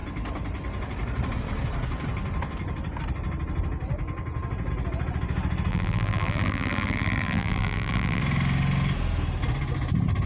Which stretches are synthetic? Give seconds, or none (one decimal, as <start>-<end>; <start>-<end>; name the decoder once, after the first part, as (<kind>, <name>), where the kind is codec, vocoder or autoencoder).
5.7-8.2 (vocoder, BigVGAN v2)

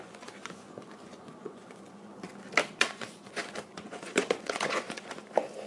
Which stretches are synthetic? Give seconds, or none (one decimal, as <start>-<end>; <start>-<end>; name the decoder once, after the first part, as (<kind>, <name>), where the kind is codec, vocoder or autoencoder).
0.0-2.1 (vocoder, Vocos); 2.8-5.7

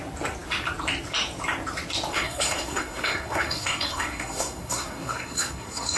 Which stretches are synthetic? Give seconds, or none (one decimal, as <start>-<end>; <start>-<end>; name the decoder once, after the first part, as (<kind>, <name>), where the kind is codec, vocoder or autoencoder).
2.1-6.0 (codec, SNAC)